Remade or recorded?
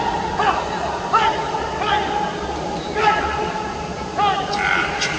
recorded